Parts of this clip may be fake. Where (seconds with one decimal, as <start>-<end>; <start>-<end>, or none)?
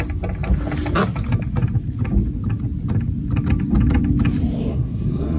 4.7-5.4